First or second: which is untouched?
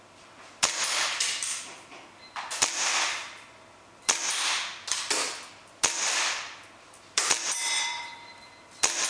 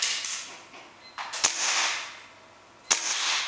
second